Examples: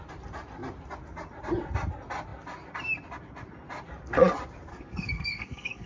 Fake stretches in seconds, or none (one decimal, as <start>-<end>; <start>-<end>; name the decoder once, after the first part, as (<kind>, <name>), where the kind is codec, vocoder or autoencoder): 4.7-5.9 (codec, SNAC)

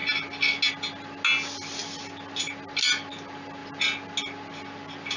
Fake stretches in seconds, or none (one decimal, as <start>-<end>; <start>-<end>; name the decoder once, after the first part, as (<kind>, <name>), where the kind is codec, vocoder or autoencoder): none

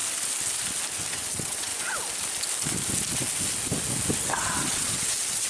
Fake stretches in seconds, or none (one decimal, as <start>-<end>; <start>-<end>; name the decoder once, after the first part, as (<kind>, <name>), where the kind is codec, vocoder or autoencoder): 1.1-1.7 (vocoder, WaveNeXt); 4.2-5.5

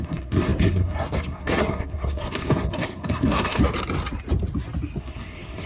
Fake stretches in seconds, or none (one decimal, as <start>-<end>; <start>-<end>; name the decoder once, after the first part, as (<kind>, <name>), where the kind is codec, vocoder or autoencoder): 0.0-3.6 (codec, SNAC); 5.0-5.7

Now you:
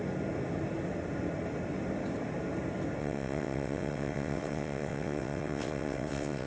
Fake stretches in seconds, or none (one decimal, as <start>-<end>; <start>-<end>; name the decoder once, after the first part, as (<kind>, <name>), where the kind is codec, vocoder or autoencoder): 3.0-6.5 (vocoder, WaveNeXt)

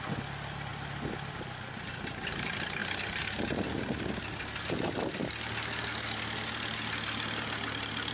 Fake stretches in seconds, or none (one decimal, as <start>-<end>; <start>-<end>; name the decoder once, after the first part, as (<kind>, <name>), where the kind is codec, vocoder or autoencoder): none